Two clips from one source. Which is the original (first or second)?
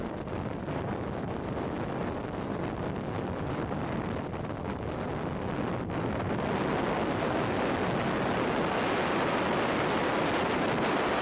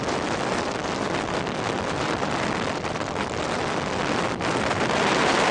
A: first